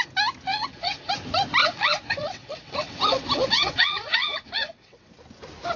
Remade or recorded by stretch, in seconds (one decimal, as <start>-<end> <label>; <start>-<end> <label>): 0.0-0.5 recorded; 0.5-1.1 remade; 1.1-1.6 recorded; 1.6-5.1 remade; 5.1-5.8 recorded